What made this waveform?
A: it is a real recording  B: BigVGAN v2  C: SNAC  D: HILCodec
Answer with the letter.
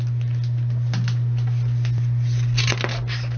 A